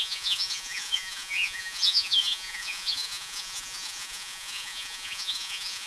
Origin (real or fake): fake